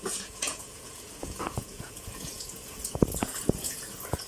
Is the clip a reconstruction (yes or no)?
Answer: yes